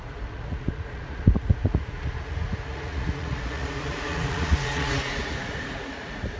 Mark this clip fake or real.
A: fake